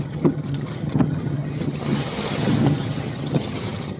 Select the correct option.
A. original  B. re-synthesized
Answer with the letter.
B